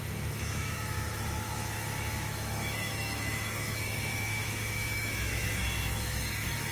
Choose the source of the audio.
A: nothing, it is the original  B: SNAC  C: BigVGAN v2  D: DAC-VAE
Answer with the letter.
D